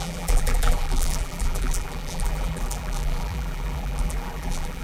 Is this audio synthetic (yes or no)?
yes